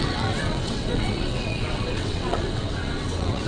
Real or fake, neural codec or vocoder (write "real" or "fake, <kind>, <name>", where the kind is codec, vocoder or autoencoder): fake, vocoder, WaveNeXt